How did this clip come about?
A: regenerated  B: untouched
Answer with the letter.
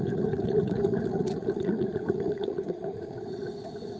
A